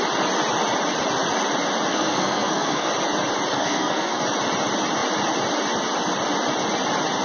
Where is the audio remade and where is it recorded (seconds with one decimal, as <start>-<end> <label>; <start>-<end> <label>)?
0.0-1.9 recorded; 1.9-2.9 remade; 2.9-3.5 recorded; 3.5-4.2 remade; 4.2-7.2 recorded